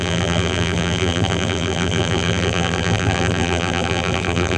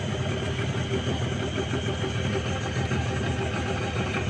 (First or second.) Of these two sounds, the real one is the second